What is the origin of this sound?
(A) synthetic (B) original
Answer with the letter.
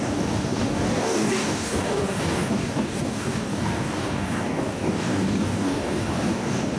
A